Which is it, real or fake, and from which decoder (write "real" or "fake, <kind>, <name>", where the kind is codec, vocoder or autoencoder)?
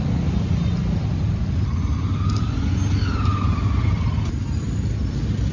real